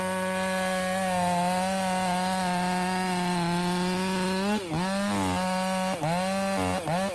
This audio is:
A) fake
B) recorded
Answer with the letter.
B